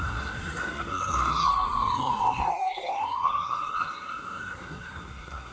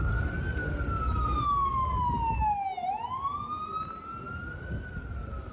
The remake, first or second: first